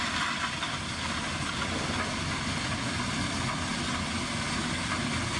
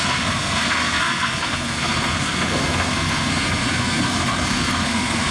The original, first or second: first